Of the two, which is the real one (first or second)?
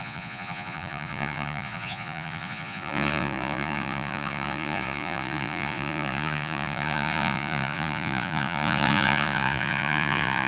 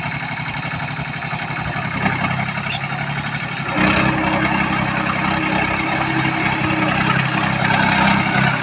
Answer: second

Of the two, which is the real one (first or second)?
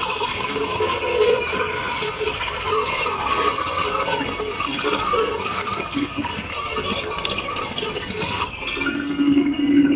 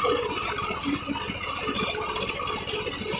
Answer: second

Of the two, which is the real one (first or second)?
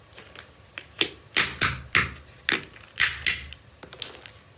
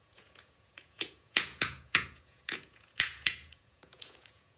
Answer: first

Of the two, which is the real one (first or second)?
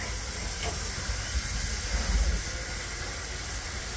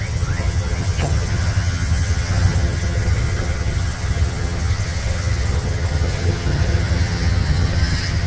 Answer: first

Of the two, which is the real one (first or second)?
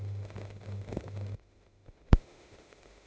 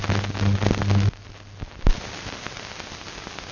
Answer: second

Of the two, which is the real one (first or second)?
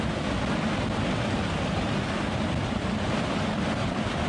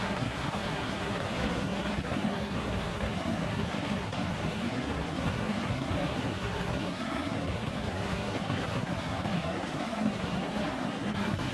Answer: first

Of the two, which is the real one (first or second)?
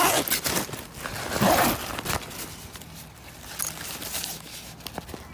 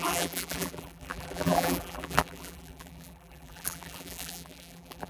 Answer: first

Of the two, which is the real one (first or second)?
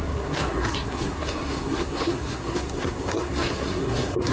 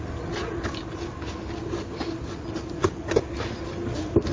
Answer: second